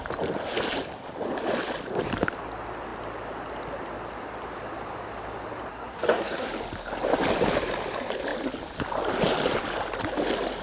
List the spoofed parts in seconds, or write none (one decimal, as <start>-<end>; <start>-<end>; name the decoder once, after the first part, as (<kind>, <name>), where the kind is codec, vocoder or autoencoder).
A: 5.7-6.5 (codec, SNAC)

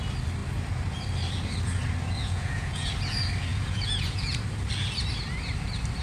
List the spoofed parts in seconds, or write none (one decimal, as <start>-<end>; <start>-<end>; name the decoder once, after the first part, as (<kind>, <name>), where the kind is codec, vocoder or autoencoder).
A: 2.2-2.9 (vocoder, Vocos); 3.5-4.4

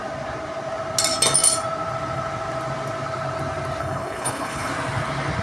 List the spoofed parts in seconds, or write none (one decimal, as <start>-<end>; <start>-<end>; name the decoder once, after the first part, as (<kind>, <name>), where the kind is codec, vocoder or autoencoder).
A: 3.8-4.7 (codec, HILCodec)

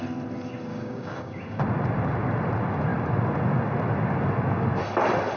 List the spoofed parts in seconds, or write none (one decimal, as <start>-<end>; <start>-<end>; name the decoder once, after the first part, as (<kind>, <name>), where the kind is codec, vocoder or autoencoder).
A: 0.7-1.6 (codec, DAC)

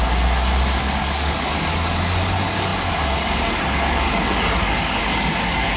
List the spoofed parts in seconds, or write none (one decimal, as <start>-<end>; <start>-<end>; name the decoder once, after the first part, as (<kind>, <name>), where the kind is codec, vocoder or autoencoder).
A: 0.8-5.8 (codec, DAC)

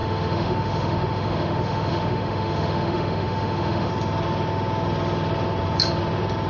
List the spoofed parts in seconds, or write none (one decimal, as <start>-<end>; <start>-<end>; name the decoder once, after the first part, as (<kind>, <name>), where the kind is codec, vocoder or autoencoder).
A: 0.0-3.9 (autoencoder, DAC-VAE)